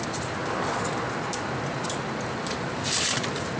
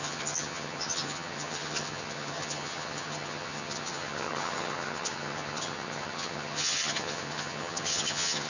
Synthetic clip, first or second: second